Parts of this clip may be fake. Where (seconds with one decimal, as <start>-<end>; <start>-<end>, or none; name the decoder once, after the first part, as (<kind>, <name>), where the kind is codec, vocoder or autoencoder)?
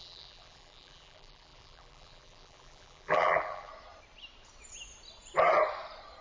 0.0-3.7 (vocoder, BigVGAN v2)